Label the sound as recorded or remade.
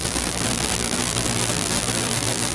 remade